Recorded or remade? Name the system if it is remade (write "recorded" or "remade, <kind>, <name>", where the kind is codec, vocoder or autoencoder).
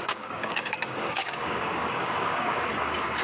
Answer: remade, codec, DAC